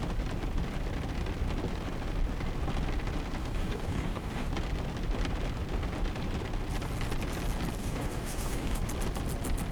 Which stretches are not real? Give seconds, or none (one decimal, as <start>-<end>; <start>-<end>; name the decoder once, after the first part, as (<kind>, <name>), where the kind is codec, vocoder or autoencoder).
3.4-4.5 (codec, DAC); 7.8-8.8